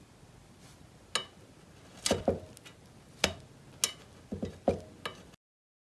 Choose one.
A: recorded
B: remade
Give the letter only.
A